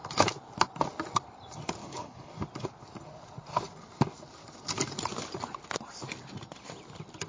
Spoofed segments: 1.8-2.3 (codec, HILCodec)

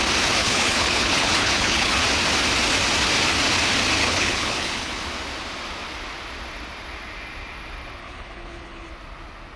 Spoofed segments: 0.4-2.0 (codec, HILCodec); 4.0-4.9; 8.0-8.9

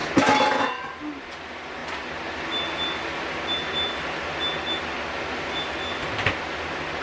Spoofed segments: none

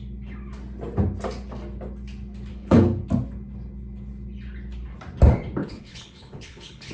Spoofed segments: 2.5-3.0 (codec, HILCodec); 5.6-6.9

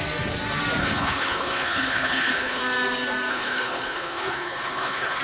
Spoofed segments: 0.8-2.6 (codec, HILCodec); 3.3-5.2

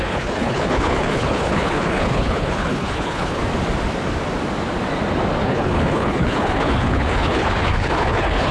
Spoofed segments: 0.0-3.4 (codec, HILCodec); 5.4-8.5

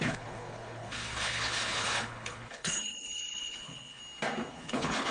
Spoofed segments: 0.0-4.0 (codec, HILCodec); 4.5-5.1